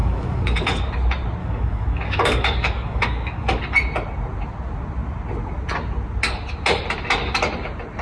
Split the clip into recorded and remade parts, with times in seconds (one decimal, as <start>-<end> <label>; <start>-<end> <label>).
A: 0.0-0.9 remade; 0.9-1.4 recorded; 1.4-3.6 remade; 3.6-8.0 recorded